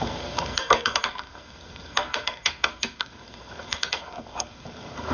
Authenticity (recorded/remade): remade